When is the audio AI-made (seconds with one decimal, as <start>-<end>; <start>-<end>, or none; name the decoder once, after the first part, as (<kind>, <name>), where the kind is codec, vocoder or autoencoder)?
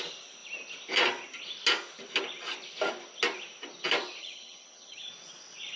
4.2-5.1 (vocoder, HiFi-GAN)